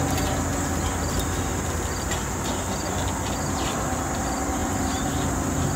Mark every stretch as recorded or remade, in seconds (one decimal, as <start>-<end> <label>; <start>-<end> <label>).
0.0-4.6 recorded; 4.6-5.8 remade